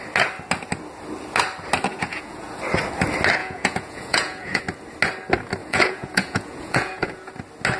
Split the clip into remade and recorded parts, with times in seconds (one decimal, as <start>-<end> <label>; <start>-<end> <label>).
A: 0.0-1.9 recorded; 1.9-2.6 remade; 2.6-3.4 recorded; 3.4-4.6 remade; 4.6-5.6 recorded; 5.6-7.3 remade; 7.3-7.8 recorded